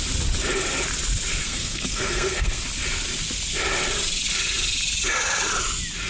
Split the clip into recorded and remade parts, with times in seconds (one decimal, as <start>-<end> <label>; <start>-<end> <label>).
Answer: 0.0-1.4 recorded; 1.4-2.6 remade; 2.6-6.1 recorded